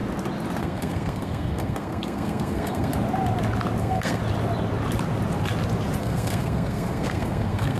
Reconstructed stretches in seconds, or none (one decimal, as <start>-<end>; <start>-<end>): 0.6-2.9; 3.8-4.2; 6.0-7.8